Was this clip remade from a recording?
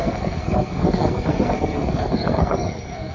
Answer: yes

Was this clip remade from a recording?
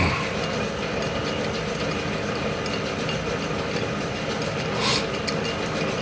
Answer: no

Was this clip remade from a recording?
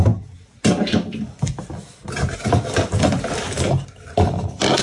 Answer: no